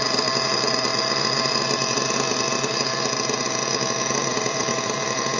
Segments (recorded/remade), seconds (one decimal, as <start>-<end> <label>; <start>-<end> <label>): 0.0-0.9 recorded; 0.9-1.6 remade; 1.6-4.2 recorded; 4.2-5.4 remade